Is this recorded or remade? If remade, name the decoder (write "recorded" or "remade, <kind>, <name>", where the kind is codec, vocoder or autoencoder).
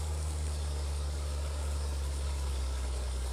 remade, codec, DAC